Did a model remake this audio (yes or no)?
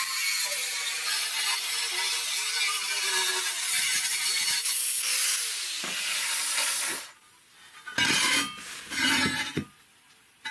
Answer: no